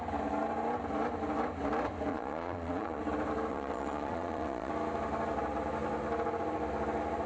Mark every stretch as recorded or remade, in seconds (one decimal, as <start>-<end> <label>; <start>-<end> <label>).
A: 0.0-2.1 recorded; 2.1-3.0 remade; 3.0-3.5 recorded; 3.5-4.7 remade; 4.7-7.3 recorded